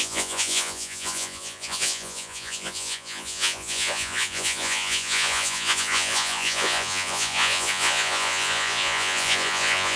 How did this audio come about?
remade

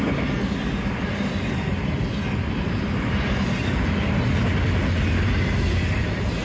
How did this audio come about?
recorded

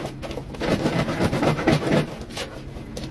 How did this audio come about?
recorded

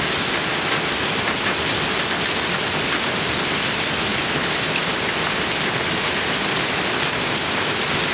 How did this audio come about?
recorded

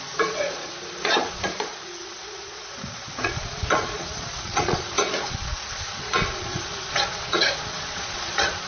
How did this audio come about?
remade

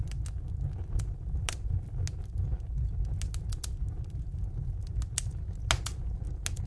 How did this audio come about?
recorded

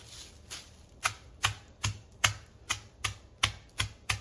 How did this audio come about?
recorded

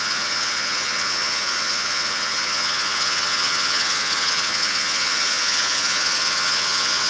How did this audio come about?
remade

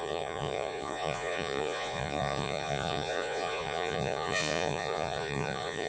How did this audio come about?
remade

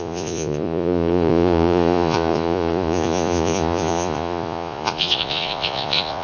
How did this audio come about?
remade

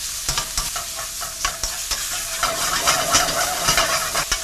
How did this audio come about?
recorded